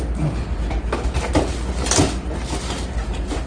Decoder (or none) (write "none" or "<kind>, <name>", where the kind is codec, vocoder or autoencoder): none